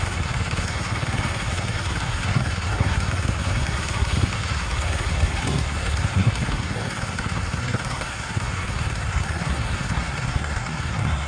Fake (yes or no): yes